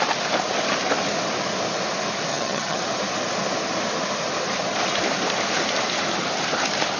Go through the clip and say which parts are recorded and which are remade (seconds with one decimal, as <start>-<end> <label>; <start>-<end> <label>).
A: 0.0-2.3 recorded; 2.3-2.8 remade; 2.8-7.0 recorded